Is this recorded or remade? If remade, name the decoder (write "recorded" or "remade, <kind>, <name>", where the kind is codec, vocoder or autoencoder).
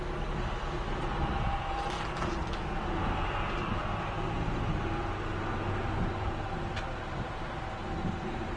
recorded